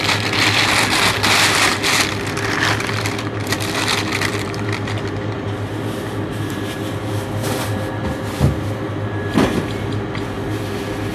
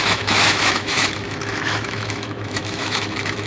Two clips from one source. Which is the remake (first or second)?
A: second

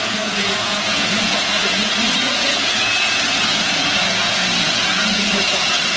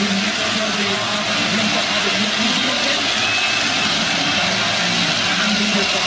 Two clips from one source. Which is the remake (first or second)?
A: first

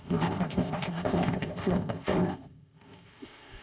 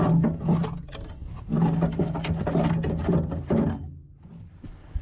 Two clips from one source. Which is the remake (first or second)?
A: first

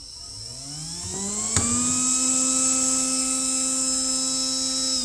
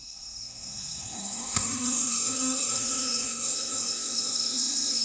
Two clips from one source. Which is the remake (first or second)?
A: second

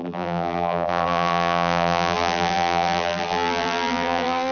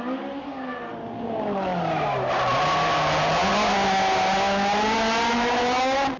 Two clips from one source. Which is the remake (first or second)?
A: first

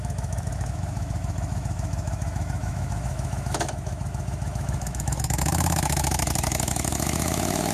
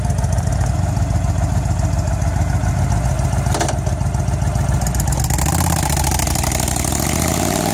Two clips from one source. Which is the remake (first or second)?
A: first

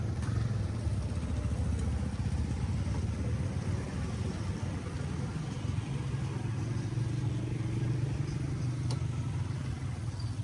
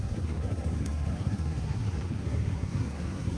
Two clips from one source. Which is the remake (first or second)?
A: second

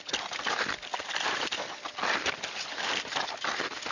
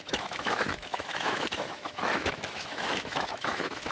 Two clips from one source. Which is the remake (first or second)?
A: second